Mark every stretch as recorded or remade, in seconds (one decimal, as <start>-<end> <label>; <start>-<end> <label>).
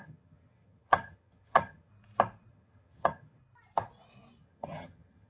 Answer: 0.0-1.9 remade; 1.9-2.5 recorded; 2.5-3.4 remade; 3.4-4.4 recorded; 4.4-5.3 remade